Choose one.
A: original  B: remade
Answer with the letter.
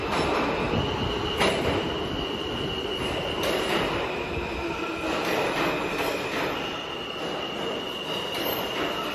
A